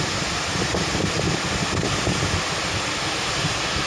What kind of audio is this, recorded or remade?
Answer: recorded